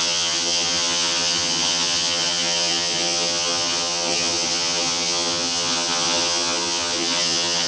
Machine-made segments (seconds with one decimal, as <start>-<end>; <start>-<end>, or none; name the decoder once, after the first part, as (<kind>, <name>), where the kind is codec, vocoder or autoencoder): 0.0-7.7 (vocoder, HiFi-GAN)